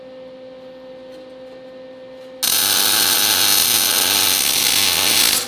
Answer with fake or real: real